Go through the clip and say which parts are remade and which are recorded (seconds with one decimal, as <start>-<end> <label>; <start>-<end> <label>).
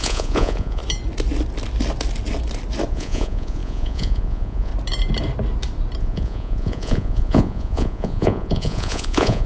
0.0-0.8 remade; 0.8-2.9 recorded; 2.9-4.7 remade; 4.7-6.0 recorded; 6.0-9.5 remade